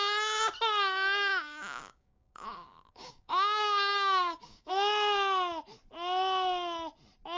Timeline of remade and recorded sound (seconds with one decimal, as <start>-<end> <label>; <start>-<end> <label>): 0.0-1.3 recorded; 1.3-4.7 remade; 4.7-7.4 recorded